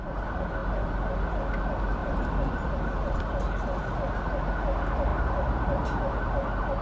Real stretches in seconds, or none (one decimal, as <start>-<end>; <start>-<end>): 0.0-0.6; 1.3-2.0; 3.3-6.8